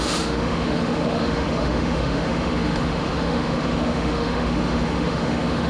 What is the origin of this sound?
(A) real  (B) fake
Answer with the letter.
B